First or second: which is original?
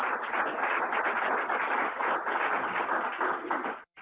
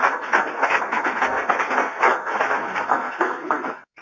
first